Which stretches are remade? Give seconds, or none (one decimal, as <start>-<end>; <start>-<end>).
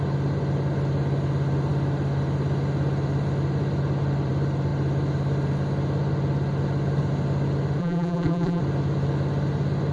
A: 7.8-8.6